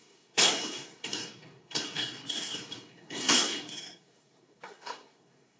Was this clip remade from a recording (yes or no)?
yes